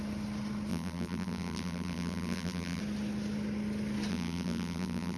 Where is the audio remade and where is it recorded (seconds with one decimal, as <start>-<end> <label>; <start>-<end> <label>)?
0.0-0.7 recorded; 0.7-2.8 remade; 2.8-4.1 recorded; 4.1-5.2 remade